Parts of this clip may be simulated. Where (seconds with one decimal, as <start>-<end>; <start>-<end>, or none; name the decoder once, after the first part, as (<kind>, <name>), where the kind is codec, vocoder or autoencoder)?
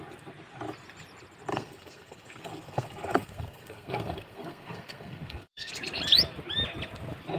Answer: 1.5-5.7 (codec, SNAC)